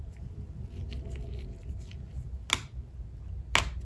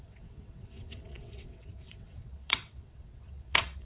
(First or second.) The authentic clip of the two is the first